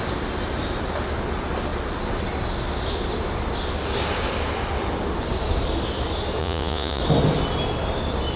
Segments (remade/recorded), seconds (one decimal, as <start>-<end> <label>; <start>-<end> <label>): 0.0-6.4 recorded; 6.4-7.0 remade; 7.0-8.4 recorded